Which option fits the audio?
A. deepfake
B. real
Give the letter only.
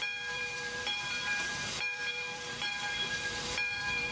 A